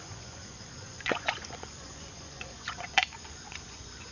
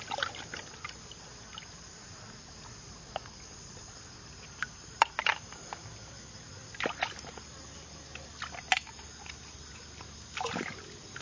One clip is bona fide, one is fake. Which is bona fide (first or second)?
second